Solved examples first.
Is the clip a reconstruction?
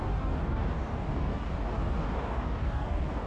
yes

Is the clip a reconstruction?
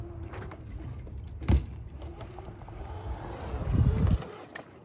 no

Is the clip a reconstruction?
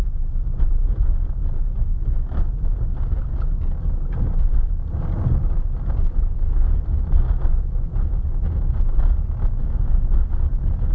no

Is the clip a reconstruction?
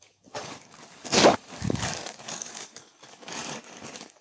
yes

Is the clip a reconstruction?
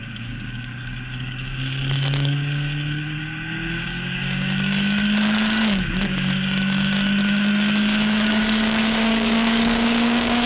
yes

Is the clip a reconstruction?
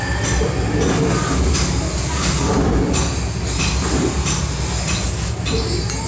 no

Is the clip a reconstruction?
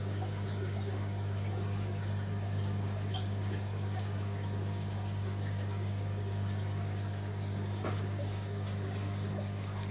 yes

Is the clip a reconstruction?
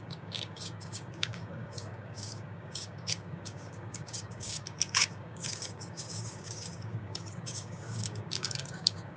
yes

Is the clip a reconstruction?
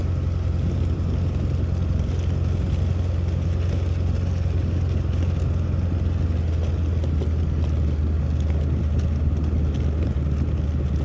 no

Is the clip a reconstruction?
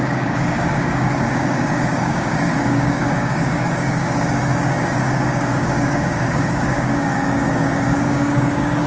yes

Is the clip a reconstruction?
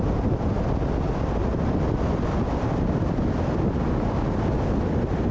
no